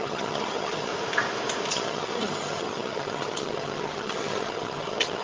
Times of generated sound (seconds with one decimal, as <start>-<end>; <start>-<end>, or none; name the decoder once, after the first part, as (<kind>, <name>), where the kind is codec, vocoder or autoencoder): 0.0-0.9 (vocoder, HiFi-GAN); 1.7-5.2